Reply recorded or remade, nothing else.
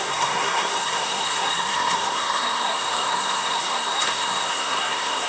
remade